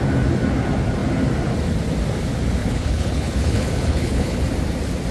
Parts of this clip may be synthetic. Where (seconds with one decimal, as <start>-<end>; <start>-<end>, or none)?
2.6-4.4